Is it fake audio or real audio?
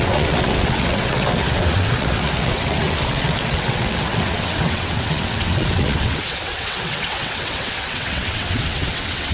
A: fake